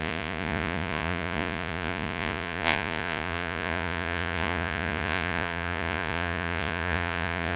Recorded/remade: remade